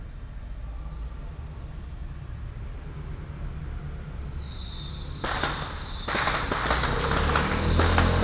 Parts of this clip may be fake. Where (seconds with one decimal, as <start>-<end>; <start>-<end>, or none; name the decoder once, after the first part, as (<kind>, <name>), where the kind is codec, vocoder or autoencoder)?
none